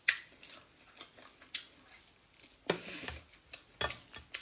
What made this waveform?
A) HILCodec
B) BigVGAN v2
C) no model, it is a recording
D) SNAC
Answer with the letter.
C